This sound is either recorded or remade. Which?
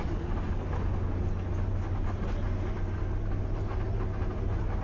recorded